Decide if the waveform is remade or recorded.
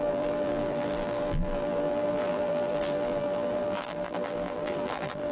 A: remade